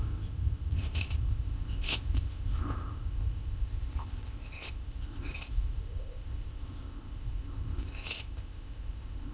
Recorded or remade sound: remade